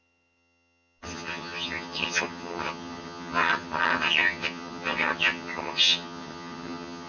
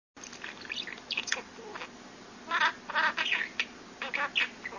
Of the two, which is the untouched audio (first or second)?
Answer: second